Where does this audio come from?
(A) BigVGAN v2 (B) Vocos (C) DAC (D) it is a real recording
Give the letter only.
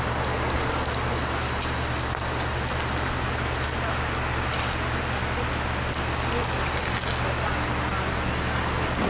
D